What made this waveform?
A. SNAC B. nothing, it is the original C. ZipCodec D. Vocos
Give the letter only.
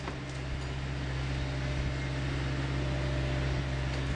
B